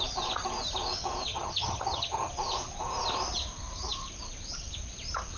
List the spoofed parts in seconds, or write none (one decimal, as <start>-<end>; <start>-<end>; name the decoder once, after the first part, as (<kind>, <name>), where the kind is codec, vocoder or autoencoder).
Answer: 1.3-2.3 (vocoder, HiFi-GAN)

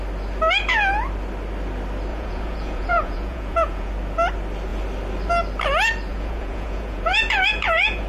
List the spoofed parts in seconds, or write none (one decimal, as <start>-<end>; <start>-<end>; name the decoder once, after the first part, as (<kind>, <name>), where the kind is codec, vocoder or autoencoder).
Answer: 2.1-3.9 (vocoder, Vocos); 6.1-8.1

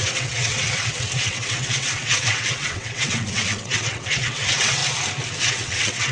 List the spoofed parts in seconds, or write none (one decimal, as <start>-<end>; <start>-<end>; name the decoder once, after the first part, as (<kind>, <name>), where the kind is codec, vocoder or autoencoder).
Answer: 0.0-4.8 (vocoder, WaveNeXt); 5.4-6.1

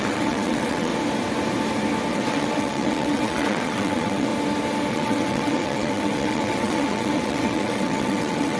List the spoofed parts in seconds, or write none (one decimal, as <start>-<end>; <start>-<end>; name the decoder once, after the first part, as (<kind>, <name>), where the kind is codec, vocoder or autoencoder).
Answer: 0.0-0.9 (vocoder, WaveNeXt); 2.1-4.3; 4.9-8.6

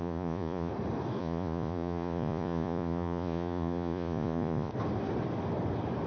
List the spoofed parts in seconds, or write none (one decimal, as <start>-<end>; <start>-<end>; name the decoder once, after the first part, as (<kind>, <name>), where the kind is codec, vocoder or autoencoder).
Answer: 0.0-0.7 (vocoder, Vocos); 1.2-4.7